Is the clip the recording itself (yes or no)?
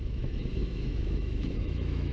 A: no